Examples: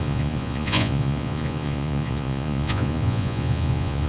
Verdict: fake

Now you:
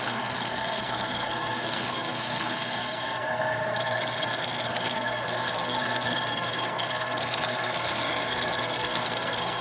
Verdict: fake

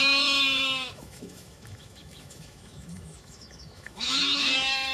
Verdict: fake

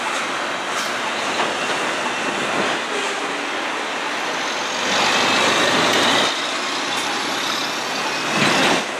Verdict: real